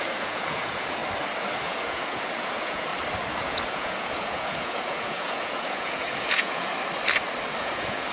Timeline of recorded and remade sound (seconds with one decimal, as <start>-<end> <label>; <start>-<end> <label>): 0.0-1.0 remade; 1.0-1.6 recorded; 1.6-2.9 remade; 2.9-3.4 recorded; 3.4-6.7 remade; 6.7-7.6 recorded; 7.6-8.1 remade